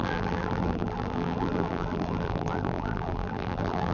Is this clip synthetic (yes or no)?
yes